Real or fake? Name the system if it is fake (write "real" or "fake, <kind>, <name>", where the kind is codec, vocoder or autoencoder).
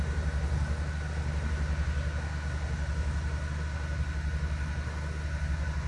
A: real